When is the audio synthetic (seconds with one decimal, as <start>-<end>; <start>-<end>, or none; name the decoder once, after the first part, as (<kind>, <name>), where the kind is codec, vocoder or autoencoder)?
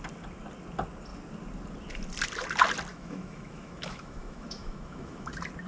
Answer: 2.9-5.3 (autoencoder, DAC-VAE)